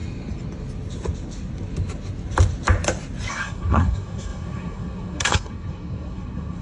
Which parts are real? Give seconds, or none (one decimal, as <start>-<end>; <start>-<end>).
0.0-3.3